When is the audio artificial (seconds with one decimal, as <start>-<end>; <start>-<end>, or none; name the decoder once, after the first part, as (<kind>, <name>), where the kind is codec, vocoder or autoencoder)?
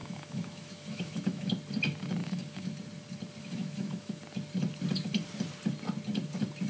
0.0-1.5 (autoencoder, DAC-VAE); 2.2-2.7; 3.4-4.2